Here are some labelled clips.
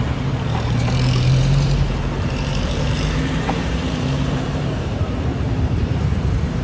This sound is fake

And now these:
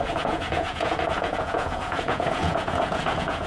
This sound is fake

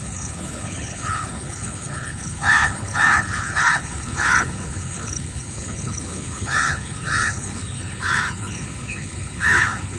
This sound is fake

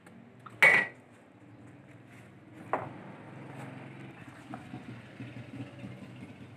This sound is real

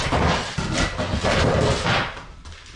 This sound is real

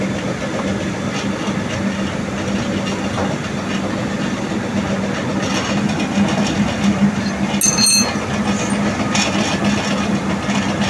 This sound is real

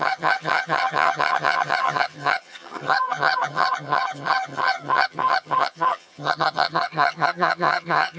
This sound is fake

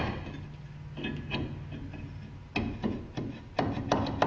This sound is real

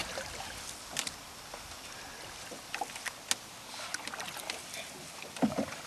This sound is real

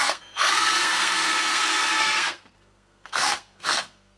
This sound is fake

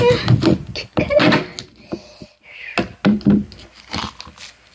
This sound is real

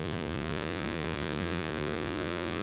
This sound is fake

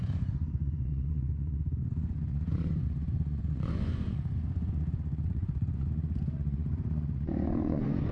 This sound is fake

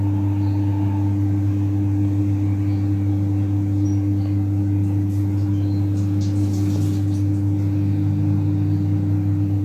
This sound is real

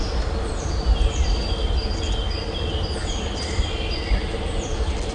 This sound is real